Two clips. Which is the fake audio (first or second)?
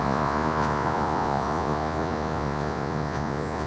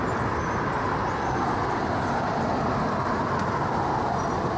first